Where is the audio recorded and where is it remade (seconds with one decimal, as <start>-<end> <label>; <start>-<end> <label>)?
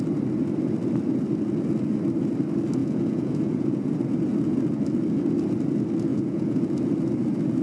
0.0-2.8 recorded; 2.8-3.9 remade; 3.9-6.1 recorded; 6.1-6.6 remade; 6.6-7.6 recorded